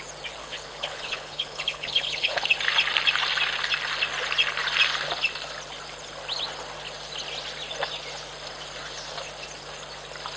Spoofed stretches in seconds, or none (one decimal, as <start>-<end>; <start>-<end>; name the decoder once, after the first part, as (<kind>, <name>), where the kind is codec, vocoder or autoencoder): 0.4-2.4 (codec, HILCodec)

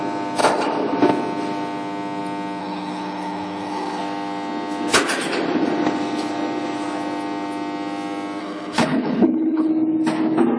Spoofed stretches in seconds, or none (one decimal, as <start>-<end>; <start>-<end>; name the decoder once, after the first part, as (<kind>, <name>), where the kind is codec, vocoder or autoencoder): 2.6-4.0 (codec, HILCodec); 8.4-9.7

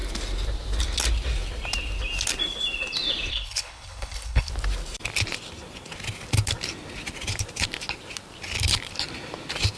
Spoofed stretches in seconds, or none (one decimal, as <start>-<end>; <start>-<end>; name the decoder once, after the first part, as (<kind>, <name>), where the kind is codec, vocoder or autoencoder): 3.3-4.5 (codec, HILCodec)

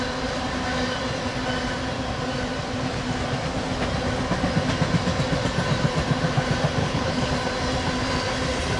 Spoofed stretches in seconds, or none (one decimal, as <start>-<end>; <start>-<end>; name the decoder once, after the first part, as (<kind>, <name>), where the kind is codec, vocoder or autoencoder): 6.8-7.3 (codec, HILCodec)

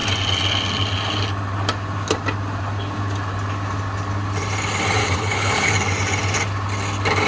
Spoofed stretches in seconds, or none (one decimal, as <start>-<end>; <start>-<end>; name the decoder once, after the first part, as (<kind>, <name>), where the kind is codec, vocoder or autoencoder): 5.0-5.7 (codec, HILCodec)

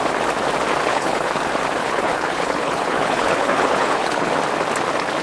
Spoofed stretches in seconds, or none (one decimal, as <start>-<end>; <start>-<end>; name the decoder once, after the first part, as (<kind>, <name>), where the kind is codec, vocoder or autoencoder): 0.9-1.4 (codec, HILCodec); 1.8-4.3

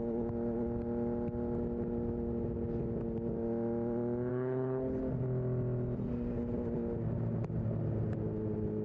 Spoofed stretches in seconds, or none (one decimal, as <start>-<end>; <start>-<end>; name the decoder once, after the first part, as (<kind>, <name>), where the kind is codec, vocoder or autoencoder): 4.3-5.0 (codec, HILCodec)